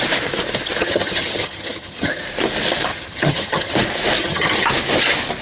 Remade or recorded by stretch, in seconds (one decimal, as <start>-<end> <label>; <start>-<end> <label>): 0.0-0.8 recorded; 0.8-2.2 remade; 2.2-2.9 recorded; 2.9-3.7 remade; 3.7-4.2 recorded; 4.2-4.7 remade; 4.7-5.4 recorded